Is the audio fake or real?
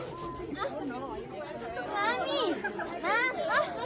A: real